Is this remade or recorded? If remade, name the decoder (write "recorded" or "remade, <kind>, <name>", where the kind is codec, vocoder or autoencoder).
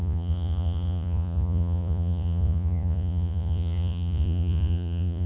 remade, vocoder, Vocos